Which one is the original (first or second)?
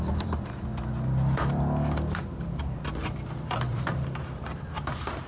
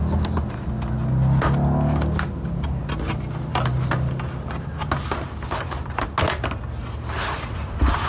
second